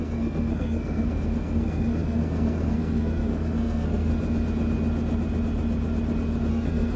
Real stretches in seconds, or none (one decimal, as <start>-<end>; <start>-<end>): 4.1-6.5